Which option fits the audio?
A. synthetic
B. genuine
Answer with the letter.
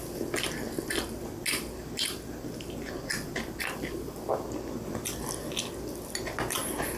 B